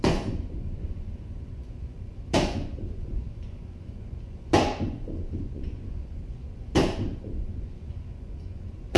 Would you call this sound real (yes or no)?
no